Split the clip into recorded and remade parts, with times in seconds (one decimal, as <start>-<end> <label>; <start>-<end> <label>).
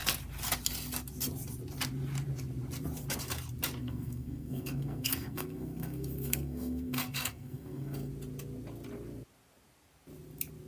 0.0-3.8 recorded; 3.8-8.1 remade; 8.1-10.7 recorded